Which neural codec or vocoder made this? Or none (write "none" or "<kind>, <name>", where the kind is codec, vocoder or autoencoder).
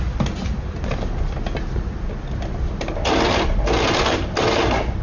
none